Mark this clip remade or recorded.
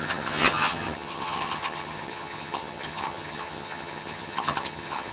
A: remade